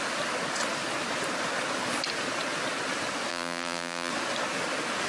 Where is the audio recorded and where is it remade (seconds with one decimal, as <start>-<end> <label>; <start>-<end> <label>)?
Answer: 0.0-3.3 recorded; 3.3-4.1 remade; 4.1-5.1 recorded